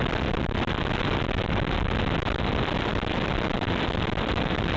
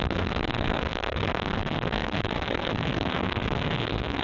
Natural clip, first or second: first